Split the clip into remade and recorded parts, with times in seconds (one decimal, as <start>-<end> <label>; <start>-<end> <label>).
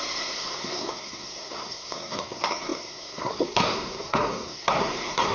0.0-5.3 remade